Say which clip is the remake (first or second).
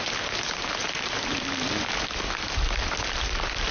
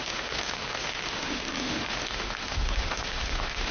second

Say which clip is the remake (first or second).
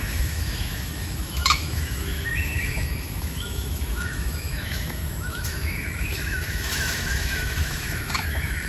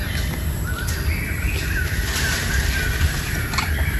first